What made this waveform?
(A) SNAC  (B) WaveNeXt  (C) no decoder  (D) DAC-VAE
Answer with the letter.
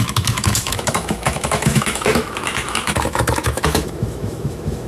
D